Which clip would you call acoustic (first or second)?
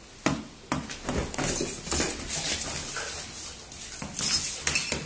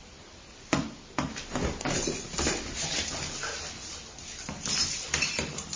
first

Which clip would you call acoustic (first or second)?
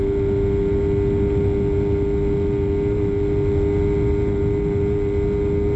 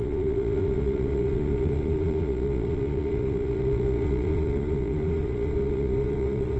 first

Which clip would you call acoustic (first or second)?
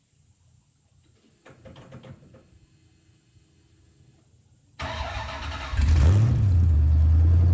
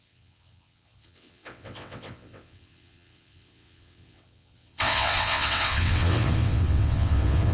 first